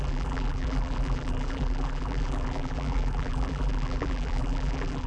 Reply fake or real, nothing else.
fake